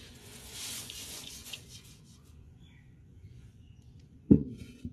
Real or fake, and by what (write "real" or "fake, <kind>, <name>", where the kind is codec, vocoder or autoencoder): fake, vocoder, Vocos